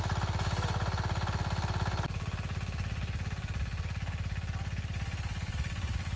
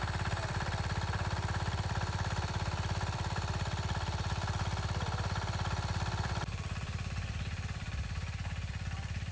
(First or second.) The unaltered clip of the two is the first